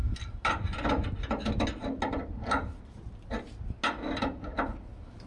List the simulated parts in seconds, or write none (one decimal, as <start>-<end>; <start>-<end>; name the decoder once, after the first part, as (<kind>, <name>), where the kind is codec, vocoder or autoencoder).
none